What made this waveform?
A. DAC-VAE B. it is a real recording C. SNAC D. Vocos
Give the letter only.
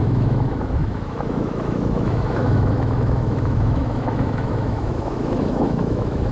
A